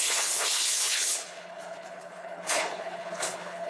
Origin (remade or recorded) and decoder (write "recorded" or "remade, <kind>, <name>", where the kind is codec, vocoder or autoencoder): remade, codec, HILCodec